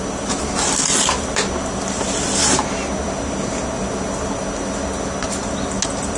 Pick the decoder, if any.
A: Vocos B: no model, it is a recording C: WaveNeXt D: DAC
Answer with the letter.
B